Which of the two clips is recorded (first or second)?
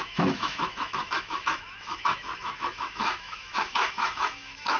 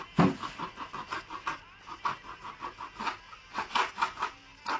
second